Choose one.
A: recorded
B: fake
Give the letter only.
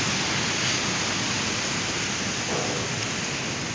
A